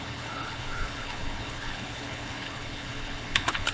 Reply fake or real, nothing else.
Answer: fake